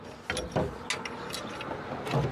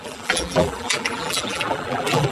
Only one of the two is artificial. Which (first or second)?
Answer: second